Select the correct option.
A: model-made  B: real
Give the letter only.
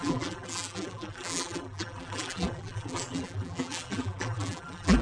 A